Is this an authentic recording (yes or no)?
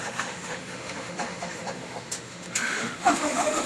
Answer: no